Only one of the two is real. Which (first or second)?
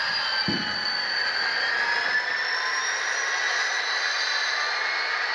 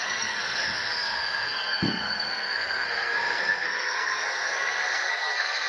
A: first